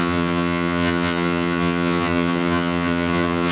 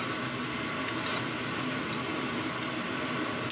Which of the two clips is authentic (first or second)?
second